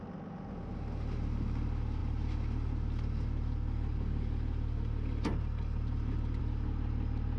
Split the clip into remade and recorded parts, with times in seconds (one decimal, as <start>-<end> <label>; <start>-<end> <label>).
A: 0.0-7.4 recorded